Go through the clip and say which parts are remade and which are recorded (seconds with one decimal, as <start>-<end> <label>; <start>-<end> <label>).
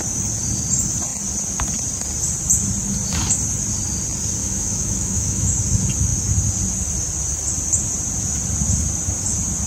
0.0-4.4 recorded; 4.4-5.5 remade; 5.5-9.7 recorded